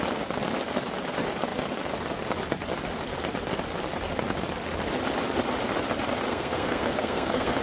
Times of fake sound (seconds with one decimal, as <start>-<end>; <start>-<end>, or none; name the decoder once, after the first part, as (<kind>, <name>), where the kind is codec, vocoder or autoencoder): 6.3-7.6 (codec, SNAC)